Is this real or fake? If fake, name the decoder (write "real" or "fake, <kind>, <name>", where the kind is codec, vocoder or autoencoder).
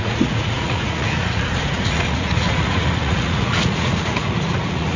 fake, vocoder, Vocos